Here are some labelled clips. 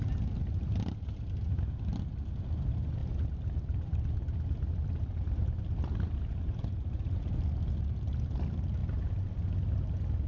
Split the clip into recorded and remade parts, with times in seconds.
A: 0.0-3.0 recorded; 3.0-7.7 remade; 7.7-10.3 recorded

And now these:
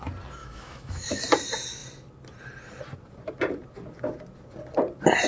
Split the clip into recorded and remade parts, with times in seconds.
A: 0.0-0.4 recorded; 0.4-1.2 remade; 1.2-5.3 recorded

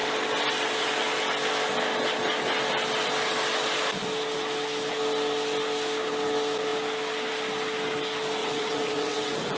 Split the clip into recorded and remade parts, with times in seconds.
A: 0.0-8.4 recorded; 8.4-9.6 remade

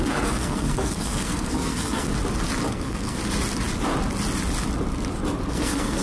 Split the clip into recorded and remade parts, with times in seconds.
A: 0.0-2.1 remade; 2.1-2.7 recorded; 2.7-3.2 remade; 3.2-5.5 recorded; 5.5-6.0 remade